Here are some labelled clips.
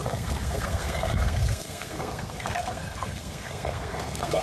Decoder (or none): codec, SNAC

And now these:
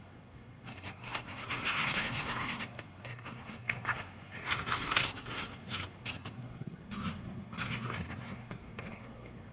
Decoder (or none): codec, SNAC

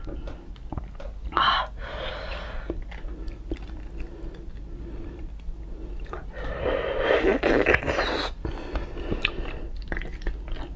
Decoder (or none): none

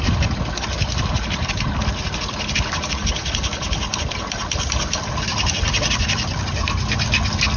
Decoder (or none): none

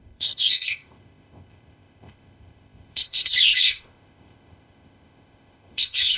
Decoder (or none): codec, ZipCodec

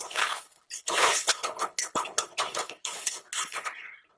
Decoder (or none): codec, HILCodec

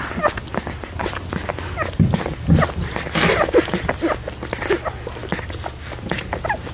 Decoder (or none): none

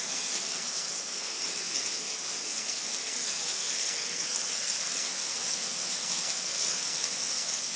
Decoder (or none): codec, SNAC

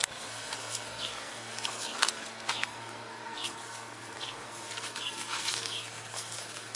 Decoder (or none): codec, SNAC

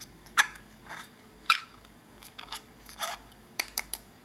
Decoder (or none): codec, DAC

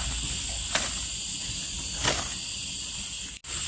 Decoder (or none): none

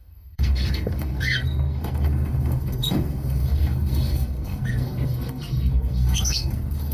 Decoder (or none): codec, SNAC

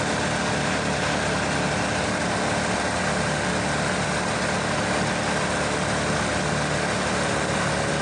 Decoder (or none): none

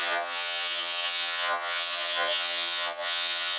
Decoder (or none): vocoder, HiFi-GAN